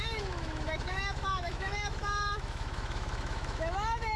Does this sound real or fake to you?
fake